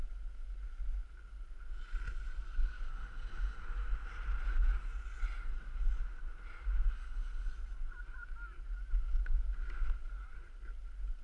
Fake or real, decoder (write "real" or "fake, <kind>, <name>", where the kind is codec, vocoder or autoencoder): real